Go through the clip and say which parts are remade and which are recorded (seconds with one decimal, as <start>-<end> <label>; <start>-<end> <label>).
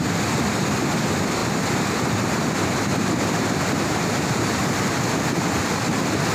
0.0-1.4 recorded; 1.4-5.2 remade; 5.2-6.3 recorded